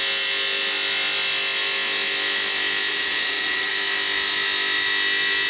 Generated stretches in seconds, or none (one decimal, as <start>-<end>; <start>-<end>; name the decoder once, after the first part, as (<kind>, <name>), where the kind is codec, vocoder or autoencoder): 2.9-3.7 (vocoder, Vocos)